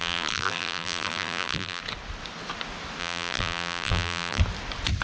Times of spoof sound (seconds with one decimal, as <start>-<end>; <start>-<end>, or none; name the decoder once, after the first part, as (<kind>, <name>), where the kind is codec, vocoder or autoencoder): 0.0-1.8 (vocoder, BigVGAN v2); 3.0-4.4